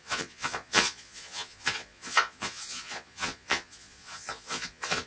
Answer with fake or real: fake